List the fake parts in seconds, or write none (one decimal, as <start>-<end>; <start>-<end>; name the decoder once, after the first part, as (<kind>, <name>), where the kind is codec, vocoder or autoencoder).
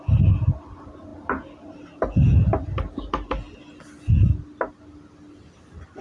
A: none